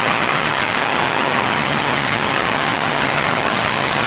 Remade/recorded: remade